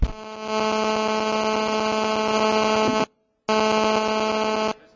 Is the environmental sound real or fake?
real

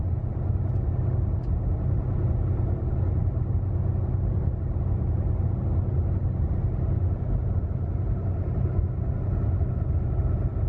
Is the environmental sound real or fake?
real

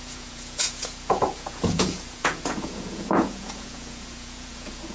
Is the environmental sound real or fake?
fake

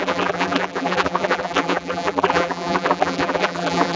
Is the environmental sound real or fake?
fake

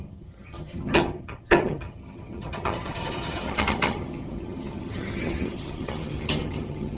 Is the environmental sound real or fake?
fake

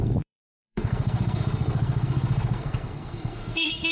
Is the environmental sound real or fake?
fake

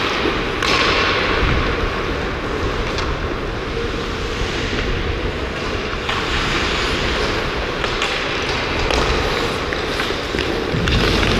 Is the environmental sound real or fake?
real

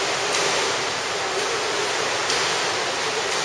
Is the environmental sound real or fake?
real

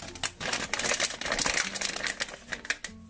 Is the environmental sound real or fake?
real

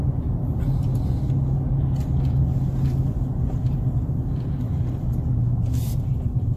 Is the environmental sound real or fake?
real